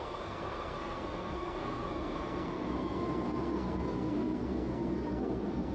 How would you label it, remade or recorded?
remade